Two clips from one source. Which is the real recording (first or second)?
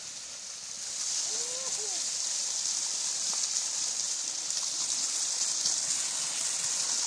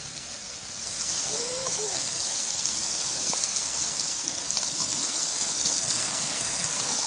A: first